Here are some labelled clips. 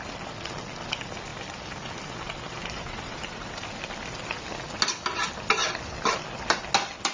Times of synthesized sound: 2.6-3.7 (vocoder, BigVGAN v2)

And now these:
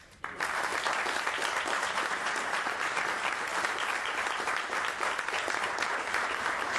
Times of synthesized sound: 0.0-0.7 (vocoder, BigVGAN v2); 1.6-6.8